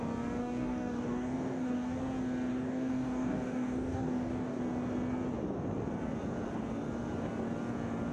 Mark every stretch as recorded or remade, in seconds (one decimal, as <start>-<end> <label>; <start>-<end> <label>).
0.0-0.4 recorded; 0.4-2.0 remade; 2.0-2.5 recorded; 2.5-4.6 remade; 4.6-8.1 recorded